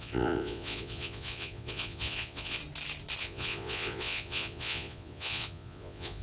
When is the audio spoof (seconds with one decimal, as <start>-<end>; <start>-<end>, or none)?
0.0-2.6; 3.2-6.2